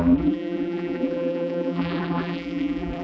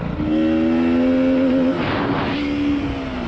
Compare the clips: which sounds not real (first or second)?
first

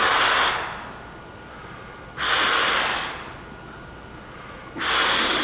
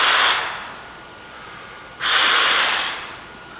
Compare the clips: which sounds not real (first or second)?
second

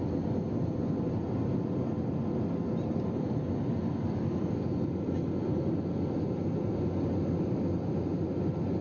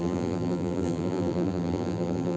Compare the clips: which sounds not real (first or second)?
second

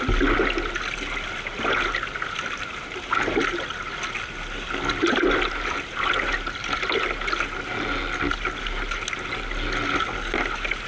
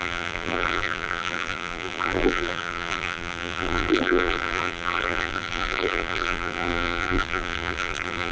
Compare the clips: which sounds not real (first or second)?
second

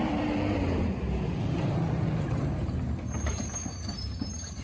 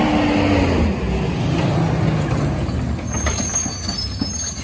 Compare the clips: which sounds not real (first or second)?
first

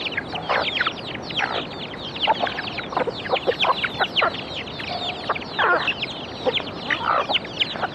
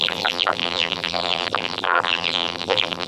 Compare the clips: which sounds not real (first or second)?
second